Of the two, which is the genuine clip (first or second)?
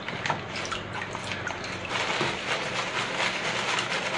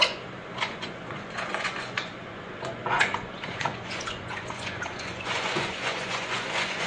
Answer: first